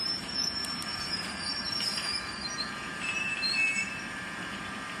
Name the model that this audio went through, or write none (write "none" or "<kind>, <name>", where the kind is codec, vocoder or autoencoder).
vocoder, BigVGAN v2